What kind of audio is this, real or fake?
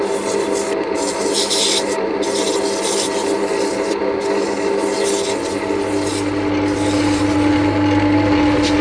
real